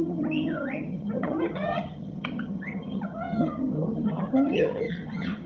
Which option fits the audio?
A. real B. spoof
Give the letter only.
B